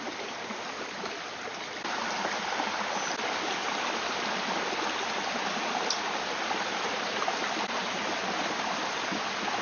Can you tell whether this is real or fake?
real